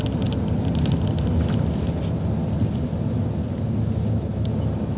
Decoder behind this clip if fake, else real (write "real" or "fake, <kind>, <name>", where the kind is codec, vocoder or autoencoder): real